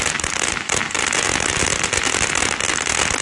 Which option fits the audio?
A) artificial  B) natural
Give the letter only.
B